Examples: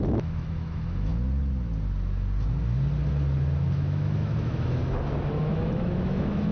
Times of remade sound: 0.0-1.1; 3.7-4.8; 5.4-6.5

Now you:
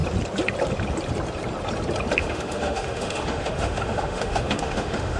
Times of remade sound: 2.2-5.2

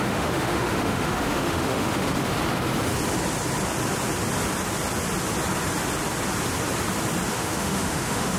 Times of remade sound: 0.0-2.3; 7.3-8.4

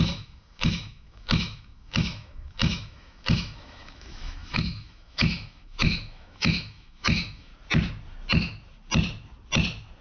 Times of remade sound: 0.0-7.5

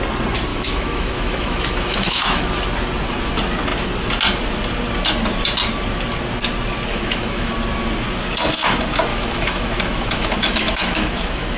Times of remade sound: 0.5-2.4; 6.9-7.5; 9.1-11.6